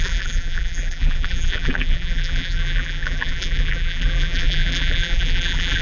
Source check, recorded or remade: remade